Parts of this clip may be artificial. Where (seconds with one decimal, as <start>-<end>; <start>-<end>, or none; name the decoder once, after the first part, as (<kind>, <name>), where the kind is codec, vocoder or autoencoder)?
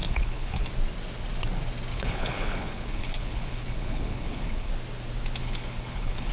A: 0.0-0.7 (codec, HILCodec); 1.9-4.7; 5.4-6.3